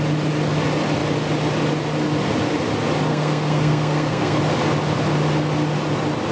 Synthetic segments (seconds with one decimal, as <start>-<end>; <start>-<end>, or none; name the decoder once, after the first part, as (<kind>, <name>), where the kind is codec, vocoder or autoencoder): 3.1-4.4 (codec, SNAC)